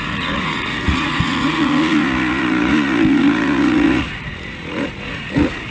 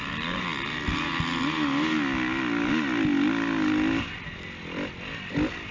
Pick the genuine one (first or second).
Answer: second